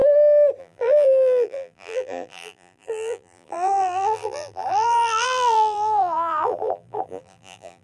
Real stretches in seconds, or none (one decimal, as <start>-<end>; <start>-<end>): 0.0-0.6